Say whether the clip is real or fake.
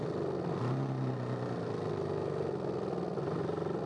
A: real